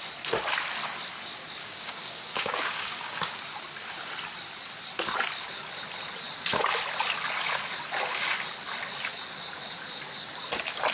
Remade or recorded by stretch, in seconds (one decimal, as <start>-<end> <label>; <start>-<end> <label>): 0.0-1.6 recorded; 1.6-3.4 remade; 3.4-10.9 recorded